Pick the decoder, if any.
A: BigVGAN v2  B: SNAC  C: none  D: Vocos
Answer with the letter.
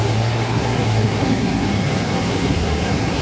B